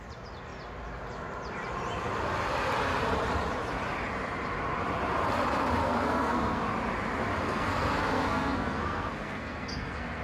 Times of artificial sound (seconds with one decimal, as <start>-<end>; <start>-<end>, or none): 5.8-6.6; 7.4-10.2